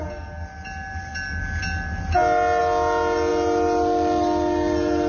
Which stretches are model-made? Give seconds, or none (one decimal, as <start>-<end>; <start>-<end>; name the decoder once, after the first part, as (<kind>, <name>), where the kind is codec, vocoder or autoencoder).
none